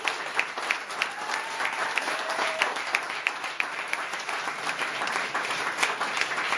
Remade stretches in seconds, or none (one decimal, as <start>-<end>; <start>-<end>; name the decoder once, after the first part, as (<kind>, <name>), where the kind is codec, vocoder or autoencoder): 1.8-5.7 (vocoder, BigVGAN v2)